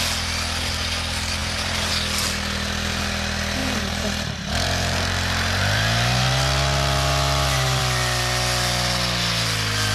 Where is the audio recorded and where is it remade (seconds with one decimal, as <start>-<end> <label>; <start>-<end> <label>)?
0.0-1.4 recorded; 1.4-1.9 remade; 1.9-3.6 recorded; 3.6-7.8 remade; 7.8-9.9 recorded